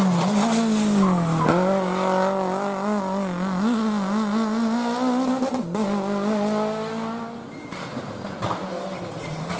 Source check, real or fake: real